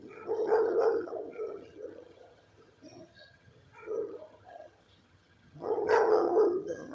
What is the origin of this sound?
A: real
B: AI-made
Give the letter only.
B